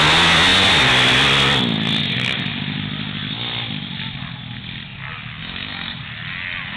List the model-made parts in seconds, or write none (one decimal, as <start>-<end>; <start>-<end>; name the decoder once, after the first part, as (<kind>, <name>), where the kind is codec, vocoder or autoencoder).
5.4-6.0 (autoencoder, DAC-VAE)